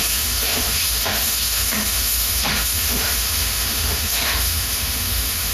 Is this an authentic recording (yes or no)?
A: no